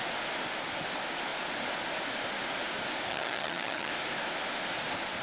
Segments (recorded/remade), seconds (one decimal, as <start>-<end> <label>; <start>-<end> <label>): 0.0-3.1 recorded; 3.1-3.9 remade; 3.9-5.2 recorded